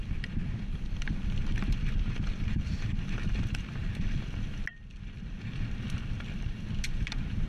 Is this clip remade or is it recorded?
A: recorded